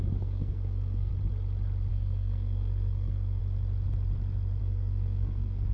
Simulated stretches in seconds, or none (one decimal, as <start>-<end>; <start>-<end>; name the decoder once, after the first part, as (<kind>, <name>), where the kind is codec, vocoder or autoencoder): 0.0-1.1 (codec, SNAC); 1.9-3.4; 4.6-5.7